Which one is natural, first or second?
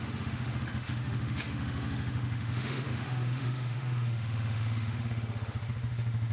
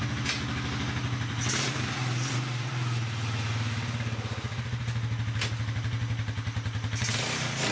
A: second